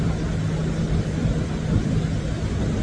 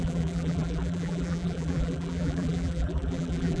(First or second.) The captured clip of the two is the first